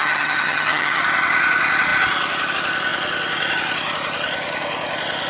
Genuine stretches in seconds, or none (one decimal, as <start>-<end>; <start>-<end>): 1.0-5.3